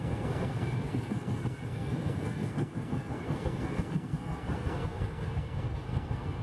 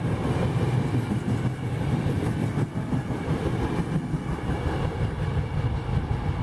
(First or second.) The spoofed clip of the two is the first